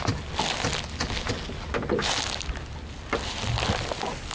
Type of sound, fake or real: real